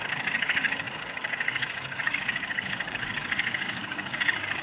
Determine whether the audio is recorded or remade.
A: remade